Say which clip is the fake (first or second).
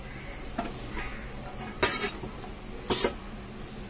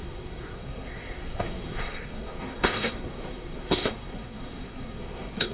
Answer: second